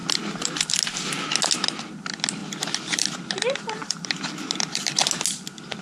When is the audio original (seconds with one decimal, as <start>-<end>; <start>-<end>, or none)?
0.6-2.4; 3.2-3.8; 5.0-5.8